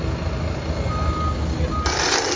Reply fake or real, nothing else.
real